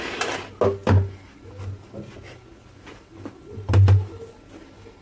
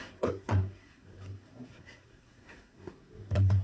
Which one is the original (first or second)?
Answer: first